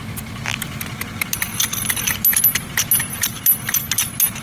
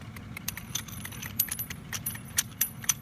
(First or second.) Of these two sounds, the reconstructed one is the second